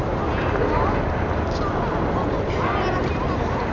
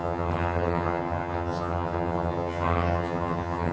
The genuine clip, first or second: first